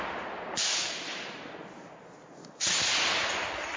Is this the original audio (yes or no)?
yes